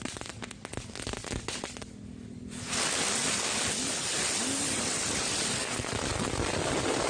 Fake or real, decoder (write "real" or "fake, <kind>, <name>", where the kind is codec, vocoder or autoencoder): real